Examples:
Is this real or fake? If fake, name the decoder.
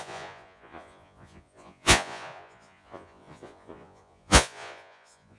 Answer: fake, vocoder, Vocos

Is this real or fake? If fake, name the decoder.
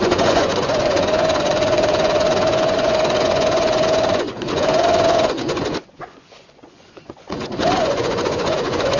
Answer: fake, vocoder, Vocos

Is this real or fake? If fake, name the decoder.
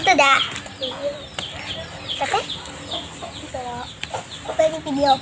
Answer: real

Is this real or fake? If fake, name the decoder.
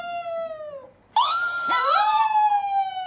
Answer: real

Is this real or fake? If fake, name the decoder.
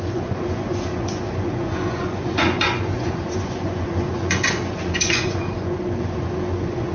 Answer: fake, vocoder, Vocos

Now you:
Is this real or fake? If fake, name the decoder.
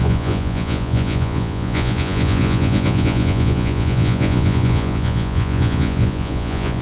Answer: fake, vocoder, Vocos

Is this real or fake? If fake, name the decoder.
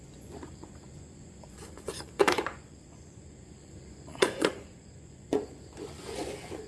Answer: fake, vocoder, Vocos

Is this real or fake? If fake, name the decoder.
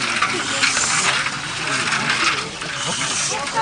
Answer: real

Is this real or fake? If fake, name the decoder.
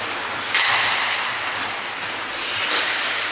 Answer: real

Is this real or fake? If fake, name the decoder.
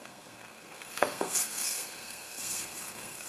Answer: fake, codec, SNAC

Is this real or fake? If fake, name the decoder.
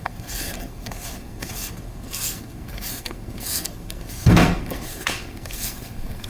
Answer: fake, codec, SNAC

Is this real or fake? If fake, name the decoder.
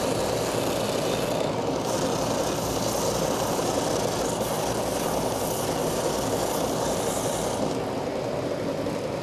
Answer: real